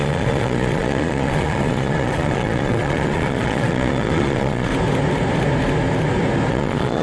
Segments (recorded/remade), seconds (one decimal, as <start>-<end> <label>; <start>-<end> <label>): 0.0-4.7 remade; 4.7-6.5 recorded; 6.5-7.0 remade

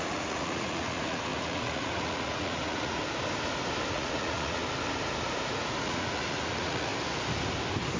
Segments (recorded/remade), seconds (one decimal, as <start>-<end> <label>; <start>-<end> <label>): 0.0-3.0 remade; 3.0-3.9 recorded; 3.9-4.6 remade; 4.6-5.8 recorded; 5.8-6.9 remade; 6.9-8.0 recorded

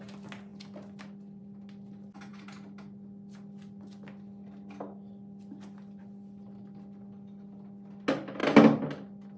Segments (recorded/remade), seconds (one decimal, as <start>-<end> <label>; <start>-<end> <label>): 0.0-9.4 recorded

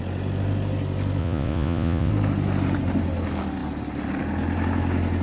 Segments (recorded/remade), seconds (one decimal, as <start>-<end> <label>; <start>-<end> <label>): 0.0-1.2 recorded; 1.2-2.1 remade; 2.1-5.2 recorded

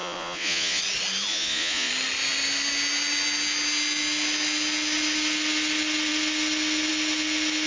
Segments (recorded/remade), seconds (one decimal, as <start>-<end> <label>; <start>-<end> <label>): 0.0-0.8 remade; 0.8-1.3 recorded; 1.3-1.9 remade; 1.9-7.7 recorded